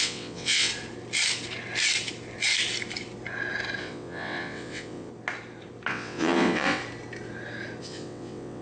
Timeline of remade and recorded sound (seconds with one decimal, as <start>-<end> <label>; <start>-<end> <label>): 0.0-0.7 remade; 0.7-3.8 recorded; 3.8-5.1 remade; 5.1-5.9 recorded; 5.9-6.8 remade; 6.8-7.8 recorded; 7.8-8.6 remade